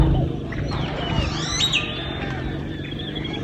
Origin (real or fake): real